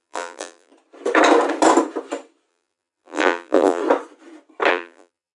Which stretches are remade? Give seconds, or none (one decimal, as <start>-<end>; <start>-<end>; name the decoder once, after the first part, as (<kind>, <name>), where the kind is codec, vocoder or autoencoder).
0.0-0.7 (vocoder, BigVGAN v2); 2.5-3.8; 4.7-5.4